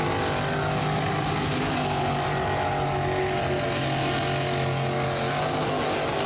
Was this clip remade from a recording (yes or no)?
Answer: no